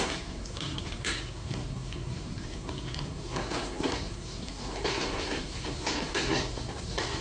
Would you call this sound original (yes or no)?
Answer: no